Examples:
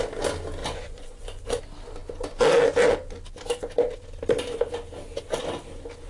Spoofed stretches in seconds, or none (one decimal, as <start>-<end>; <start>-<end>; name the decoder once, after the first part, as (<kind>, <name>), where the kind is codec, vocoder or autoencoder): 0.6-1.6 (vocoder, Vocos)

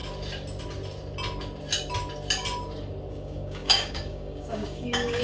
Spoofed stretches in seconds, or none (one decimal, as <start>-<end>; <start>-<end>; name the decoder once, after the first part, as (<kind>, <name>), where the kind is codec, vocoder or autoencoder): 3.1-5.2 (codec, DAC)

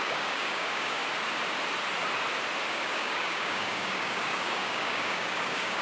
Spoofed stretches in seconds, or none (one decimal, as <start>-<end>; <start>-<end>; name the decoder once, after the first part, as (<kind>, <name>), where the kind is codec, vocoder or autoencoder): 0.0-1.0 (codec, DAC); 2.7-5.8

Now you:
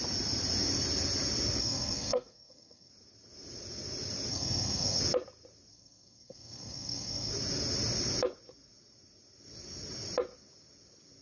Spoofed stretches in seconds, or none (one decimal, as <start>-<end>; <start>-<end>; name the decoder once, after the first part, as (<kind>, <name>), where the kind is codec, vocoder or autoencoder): 1.6-2.9 (codec, SNAC); 4.3-5.0; 5.7-7.3